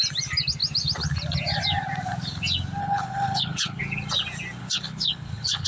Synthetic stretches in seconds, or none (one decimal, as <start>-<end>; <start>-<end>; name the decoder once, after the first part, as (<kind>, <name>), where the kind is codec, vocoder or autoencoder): 2.8-3.8 (codec, HILCodec); 4.6-5.7

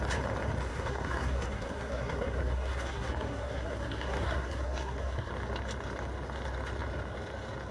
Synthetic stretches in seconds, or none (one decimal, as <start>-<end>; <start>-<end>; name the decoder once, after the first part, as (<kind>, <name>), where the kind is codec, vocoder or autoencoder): 0.7-5.3 (codec, SNAC)

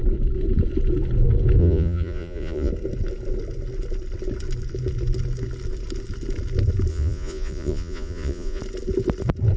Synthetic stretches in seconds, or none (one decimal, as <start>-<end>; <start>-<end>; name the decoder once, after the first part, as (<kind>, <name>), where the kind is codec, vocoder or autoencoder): 1.6-2.7 (vocoder, Vocos); 6.9-8.6

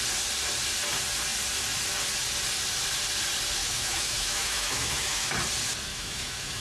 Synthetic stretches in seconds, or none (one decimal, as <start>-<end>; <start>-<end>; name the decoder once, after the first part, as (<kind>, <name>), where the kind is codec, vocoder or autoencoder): 3.6-5.3 (autoencoder, DAC-VAE); 5.9-6.6

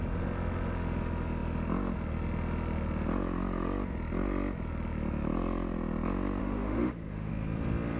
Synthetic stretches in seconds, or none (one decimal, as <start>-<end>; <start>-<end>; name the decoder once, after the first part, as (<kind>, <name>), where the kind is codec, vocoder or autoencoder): 6.4-7.3 (autoencoder, DAC-VAE)